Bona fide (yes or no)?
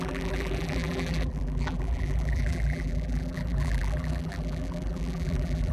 no